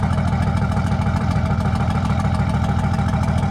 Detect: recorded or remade remade